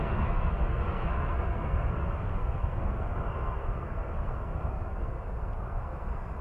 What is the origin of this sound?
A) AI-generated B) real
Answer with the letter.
A